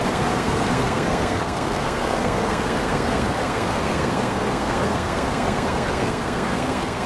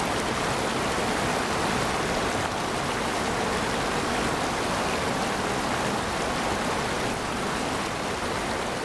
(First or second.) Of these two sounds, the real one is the second